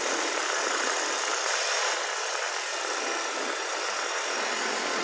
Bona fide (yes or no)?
yes